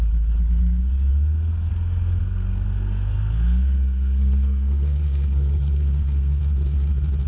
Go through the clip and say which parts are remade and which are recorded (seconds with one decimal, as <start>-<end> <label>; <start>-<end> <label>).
0.0-1.1 recorded; 1.1-1.7 remade; 1.7-2.2 recorded; 2.2-6.4 remade; 6.4-7.3 recorded